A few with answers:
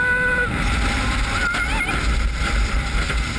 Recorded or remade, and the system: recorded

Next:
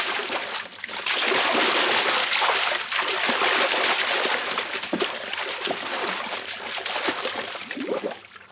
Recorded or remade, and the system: recorded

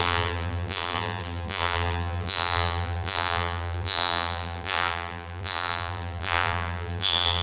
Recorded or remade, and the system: remade, vocoder, BigVGAN v2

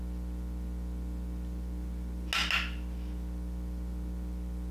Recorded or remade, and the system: recorded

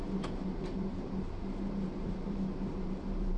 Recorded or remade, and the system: remade, vocoder, BigVGAN v2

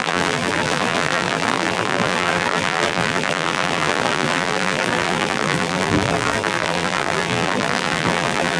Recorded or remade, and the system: remade, vocoder, BigVGAN v2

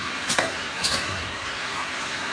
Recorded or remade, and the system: remade, codec, SNAC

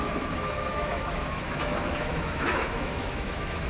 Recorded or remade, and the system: remade, autoencoder, DAC-VAE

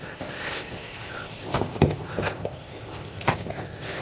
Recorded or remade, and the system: remade, codec, ZipCodec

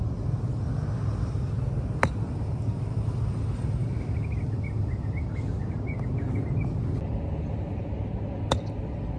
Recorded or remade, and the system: recorded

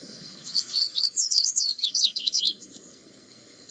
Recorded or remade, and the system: remade, codec, SNAC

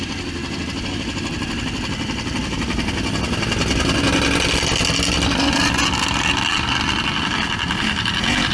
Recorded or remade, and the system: recorded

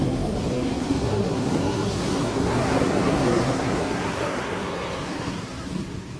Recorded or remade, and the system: remade, codec, SNAC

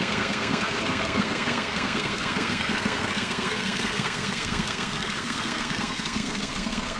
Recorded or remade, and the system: remade, codec, SNAC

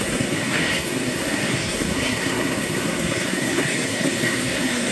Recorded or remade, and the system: remade, codec, SNAC